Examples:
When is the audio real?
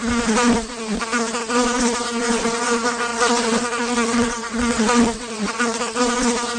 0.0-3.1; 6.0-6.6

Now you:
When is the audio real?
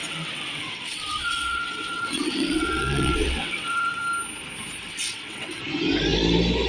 4.0-4.8; 5.6-6.7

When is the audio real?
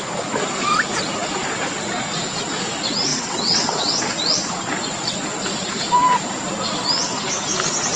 0.0-3.1; 4.0-8.0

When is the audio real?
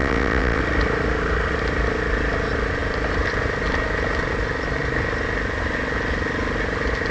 0.6-7.1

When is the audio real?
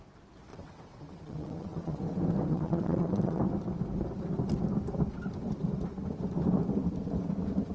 0.0-0.5; 2.0-2.5; 3.4-7.7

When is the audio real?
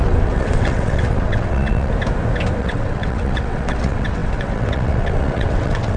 1.9-2.6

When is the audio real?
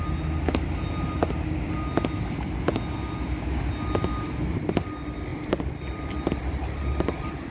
0.0-7.5